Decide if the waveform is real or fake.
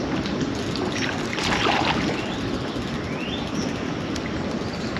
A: real